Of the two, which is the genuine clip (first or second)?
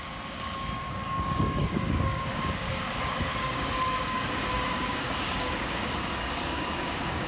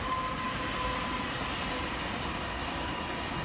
second